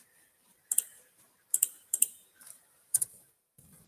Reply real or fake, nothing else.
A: fake